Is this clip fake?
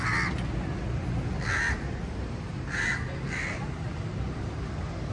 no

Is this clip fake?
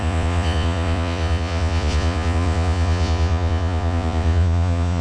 yes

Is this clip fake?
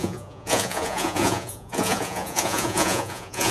yes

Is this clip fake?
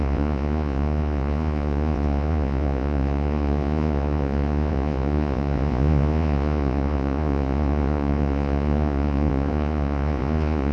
yes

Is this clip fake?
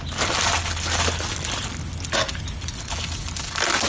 no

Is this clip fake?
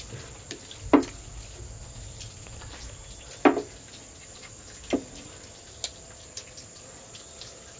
no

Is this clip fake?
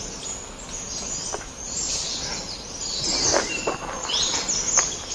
no